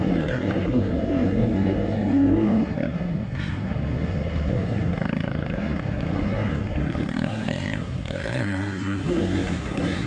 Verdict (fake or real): fake